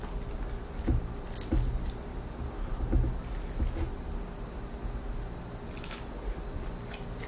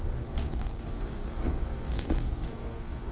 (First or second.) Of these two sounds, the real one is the first